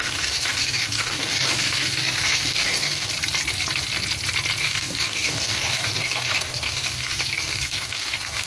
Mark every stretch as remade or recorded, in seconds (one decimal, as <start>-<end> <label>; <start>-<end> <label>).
0.0-3.1 remade; 3.1-4.6 recorded; 4.6-8.5 remade